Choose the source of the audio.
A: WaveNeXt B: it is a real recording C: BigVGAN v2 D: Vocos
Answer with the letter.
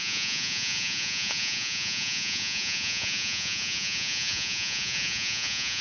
D